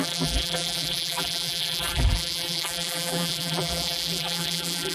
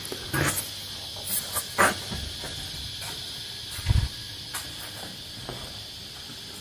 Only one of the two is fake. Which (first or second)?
first